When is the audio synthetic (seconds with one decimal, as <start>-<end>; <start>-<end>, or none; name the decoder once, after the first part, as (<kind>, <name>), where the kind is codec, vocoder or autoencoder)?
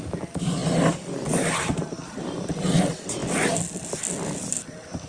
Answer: none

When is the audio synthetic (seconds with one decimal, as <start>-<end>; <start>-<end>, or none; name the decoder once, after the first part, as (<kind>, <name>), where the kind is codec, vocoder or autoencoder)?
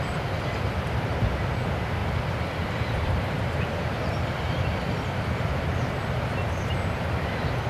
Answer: 2.0-5.7 (vocoder, BigVGAN v2)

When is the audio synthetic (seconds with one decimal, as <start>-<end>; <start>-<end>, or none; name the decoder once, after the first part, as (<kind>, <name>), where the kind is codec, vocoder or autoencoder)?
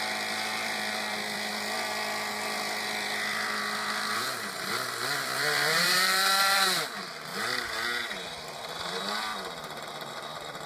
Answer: 0.0-7.3 (vocoder, BigVGAN v2); 8.7-9.3; 10.1-10.7